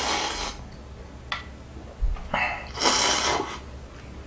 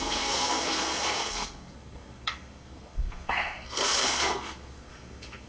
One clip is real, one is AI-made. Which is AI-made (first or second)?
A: second